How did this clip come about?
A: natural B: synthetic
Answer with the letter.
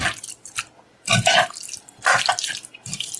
A